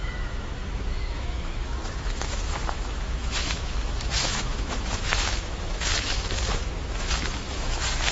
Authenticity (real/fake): fake